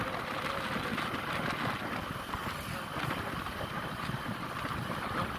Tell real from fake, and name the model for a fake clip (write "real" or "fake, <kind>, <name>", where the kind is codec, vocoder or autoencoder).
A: real